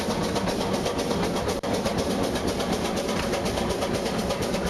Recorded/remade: recorded